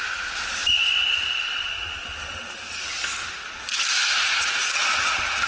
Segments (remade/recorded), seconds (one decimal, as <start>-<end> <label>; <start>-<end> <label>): 0.0-5.5 recorded